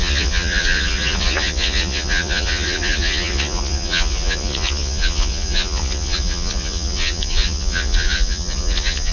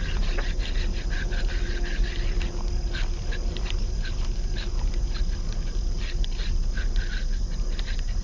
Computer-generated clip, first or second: first